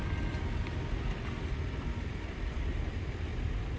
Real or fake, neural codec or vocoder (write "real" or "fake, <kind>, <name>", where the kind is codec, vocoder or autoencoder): fake, vocoder, BigVGAN v2